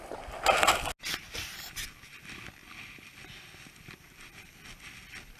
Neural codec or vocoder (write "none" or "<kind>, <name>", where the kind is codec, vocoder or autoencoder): none